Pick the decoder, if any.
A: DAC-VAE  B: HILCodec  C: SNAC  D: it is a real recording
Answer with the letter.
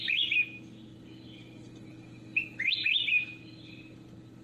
D